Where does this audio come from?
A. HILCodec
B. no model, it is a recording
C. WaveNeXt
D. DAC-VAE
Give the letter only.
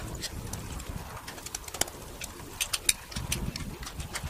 B